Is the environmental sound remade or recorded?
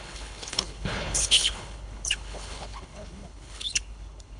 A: remade